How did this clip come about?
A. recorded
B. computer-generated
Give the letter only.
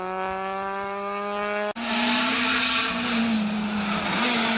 A